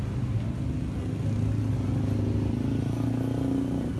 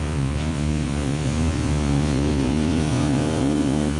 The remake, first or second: second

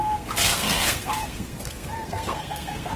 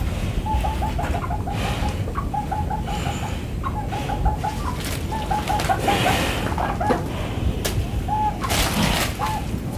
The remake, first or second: first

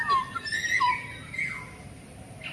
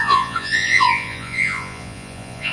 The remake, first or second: second